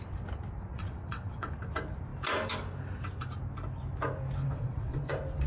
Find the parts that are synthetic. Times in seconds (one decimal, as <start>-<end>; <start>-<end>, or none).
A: 0.7-1.5; 4.4-5.1